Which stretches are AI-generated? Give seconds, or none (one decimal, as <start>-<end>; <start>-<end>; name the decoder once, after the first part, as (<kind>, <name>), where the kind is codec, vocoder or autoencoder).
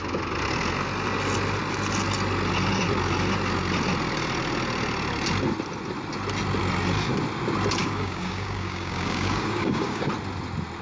7.8-10.1 (codec, DAC)